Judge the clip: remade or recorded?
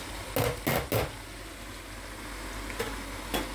recorded